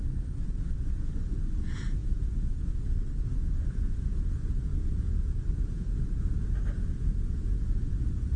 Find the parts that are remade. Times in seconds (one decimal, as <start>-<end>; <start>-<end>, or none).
0.0-8.4